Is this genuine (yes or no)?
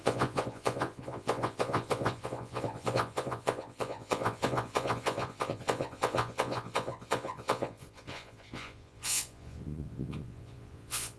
no